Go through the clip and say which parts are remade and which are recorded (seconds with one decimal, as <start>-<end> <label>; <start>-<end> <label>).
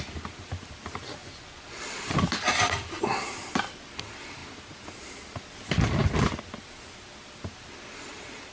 0.0-1.2 recorded; 1.2-1.8 remade; 1.8-8.5 recorded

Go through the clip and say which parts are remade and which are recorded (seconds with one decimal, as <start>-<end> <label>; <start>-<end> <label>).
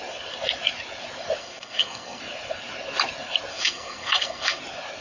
0.0-1.4 recorded; 1.4-2.2 remade; 2.2-3.5 recorded; 3.5-4.6 remade; 4.6-5.0 recorded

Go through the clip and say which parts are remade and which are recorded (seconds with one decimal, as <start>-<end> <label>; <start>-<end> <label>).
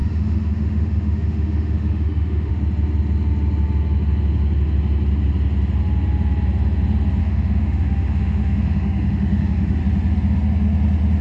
0.0-2.5 remade; 2.5-7.2 recorded; 7.2-9.8 remade; 9.8-11.2 recorded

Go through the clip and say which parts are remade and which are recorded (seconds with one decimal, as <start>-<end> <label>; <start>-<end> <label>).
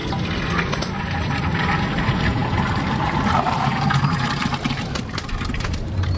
0.0-1.0 recorded; 1.0-6.2 remade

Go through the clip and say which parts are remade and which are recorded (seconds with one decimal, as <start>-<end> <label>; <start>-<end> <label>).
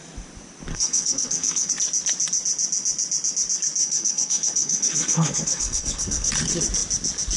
0.0-0.7 recorded; 0.7-1.7 remade; 1.7-3.8 recorded; 3.8-6.3 remade; 6.3-7.4 recorded